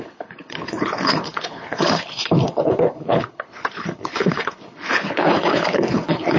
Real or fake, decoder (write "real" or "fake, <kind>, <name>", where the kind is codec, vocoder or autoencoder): fake, codec, HILCodec